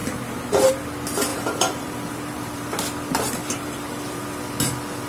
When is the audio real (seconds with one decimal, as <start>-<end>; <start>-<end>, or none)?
0.7-1.3; 2.7-3.4; 4.2-5.1